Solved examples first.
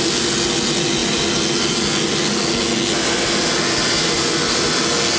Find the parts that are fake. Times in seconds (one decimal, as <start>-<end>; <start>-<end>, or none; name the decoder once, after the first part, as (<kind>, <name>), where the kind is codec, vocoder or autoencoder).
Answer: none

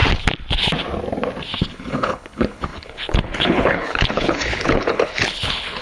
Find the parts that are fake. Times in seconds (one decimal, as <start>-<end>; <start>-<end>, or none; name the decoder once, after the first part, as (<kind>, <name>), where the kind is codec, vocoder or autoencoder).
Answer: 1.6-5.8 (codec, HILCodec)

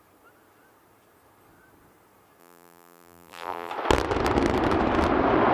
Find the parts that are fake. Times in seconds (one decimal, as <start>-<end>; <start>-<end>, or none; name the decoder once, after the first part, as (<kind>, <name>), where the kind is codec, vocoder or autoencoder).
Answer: 2.4-3.7 (vocoder, BigVGAN v2)

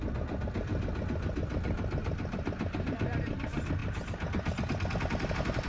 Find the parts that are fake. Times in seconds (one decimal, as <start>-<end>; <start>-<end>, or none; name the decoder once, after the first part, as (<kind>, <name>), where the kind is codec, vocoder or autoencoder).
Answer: none

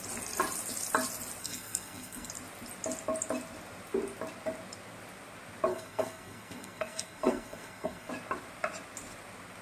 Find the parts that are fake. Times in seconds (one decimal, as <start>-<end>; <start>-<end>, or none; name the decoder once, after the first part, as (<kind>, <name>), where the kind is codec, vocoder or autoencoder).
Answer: 1.4-2.3 (codec, SNAC); 5.7-8.1

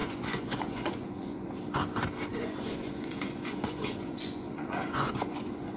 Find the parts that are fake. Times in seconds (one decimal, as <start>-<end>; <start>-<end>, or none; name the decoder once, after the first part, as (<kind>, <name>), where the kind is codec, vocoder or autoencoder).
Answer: 0.0-1.6 (vocoder, Vocos); 2.3-5.8

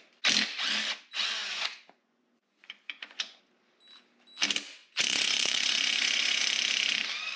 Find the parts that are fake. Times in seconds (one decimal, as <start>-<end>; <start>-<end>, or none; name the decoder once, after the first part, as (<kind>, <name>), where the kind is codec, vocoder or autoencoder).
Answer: 1.4-3.4 (vocoder, Vocos); 4.8-6.4